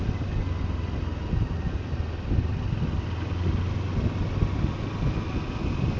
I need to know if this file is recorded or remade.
recorded